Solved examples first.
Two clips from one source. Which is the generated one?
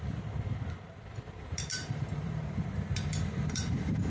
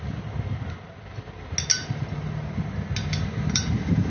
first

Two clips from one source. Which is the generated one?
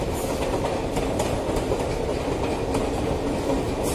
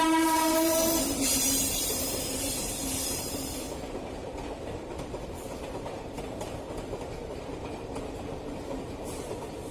second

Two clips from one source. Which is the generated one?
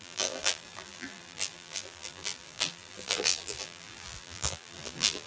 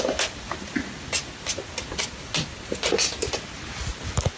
first